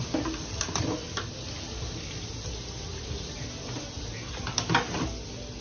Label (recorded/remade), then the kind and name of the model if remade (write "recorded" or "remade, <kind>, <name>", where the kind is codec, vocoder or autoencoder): recorded